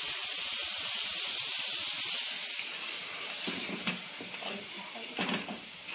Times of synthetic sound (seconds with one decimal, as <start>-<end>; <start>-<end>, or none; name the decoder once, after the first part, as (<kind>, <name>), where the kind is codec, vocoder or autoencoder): 0.0-3.0 (vocoder, BigVGAN v2); 4.6-5.9

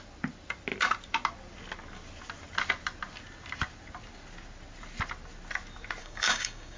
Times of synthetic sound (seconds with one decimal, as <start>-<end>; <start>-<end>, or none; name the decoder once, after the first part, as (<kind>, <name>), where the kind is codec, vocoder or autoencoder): 6.0-6.8 (codec, DAC)

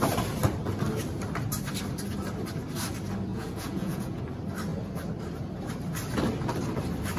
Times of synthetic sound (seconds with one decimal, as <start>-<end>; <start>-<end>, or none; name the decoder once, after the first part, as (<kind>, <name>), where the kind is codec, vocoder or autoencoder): 3.3-4.2 (vocoder, Vocos)

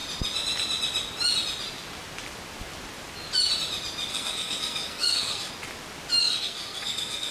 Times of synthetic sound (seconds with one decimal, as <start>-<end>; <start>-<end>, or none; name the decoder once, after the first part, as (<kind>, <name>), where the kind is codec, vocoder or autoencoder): 4.1-5.5 (codec, SNAC); 6.2-7.3

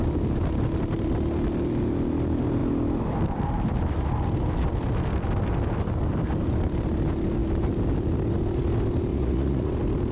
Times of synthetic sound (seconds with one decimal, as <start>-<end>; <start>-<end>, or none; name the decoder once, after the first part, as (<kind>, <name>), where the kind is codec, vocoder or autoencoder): 9.1-9.7 (vocoder, Vocos)

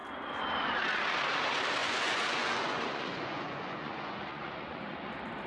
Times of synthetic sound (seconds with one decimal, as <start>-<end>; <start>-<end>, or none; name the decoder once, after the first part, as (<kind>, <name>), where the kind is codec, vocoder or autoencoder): 1.8-5.1 (vocoder, Vocos)

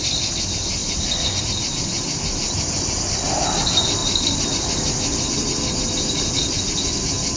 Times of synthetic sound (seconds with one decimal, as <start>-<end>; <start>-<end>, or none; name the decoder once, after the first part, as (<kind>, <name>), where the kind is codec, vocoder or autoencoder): none